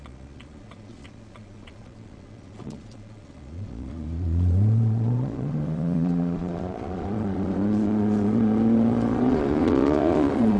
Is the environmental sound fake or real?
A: fake